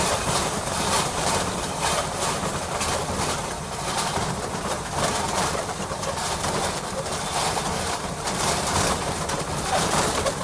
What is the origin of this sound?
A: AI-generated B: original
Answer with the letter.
A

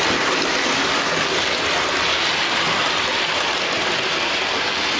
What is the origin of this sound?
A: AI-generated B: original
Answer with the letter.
B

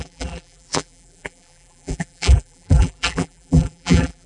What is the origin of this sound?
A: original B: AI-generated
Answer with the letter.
B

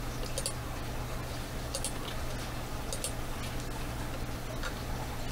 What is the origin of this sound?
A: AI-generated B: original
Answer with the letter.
B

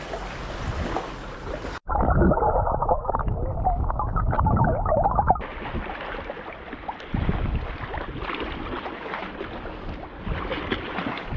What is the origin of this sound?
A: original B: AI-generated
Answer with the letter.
A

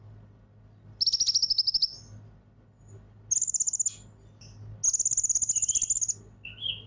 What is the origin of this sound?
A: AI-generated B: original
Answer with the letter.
B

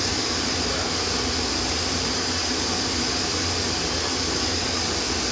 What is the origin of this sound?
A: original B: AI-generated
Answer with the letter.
A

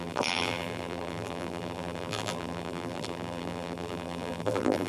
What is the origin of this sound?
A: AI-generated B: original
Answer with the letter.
A